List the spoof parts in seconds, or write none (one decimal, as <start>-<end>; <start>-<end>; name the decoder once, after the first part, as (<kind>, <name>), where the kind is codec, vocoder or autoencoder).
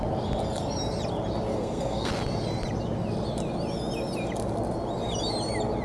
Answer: 1.5-2.1 (codec, SNAC)